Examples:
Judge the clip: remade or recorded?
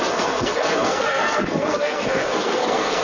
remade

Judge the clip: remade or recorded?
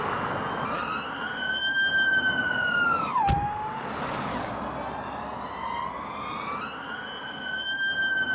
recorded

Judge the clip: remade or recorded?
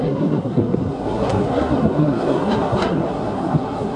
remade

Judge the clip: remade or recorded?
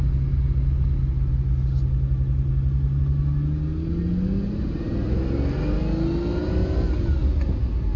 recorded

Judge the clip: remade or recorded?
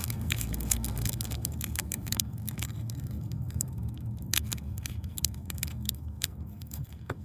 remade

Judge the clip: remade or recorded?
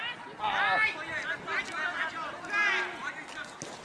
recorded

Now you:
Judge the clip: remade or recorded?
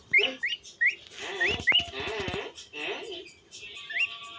recorded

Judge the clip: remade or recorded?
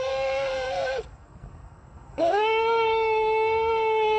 remade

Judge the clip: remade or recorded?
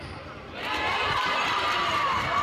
recorded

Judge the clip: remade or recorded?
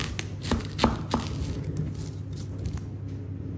recorded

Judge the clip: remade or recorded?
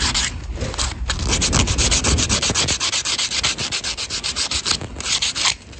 recorded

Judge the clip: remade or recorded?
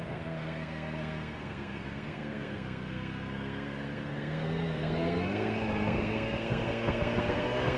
remade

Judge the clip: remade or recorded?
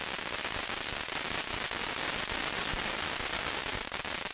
recorded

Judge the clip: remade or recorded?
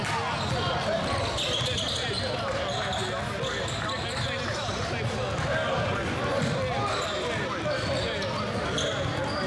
recorded